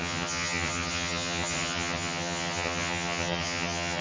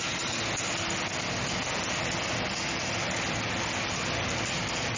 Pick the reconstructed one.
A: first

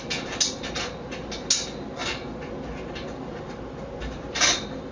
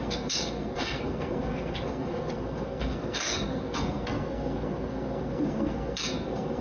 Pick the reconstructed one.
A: second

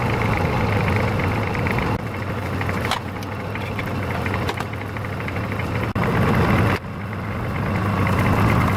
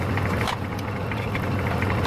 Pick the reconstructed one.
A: second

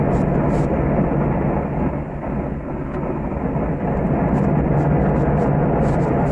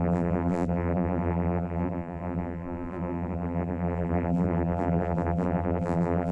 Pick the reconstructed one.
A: second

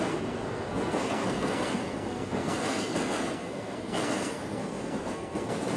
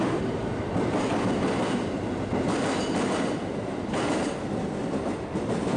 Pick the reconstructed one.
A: first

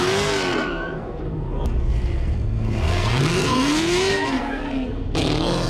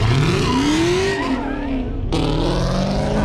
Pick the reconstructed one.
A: first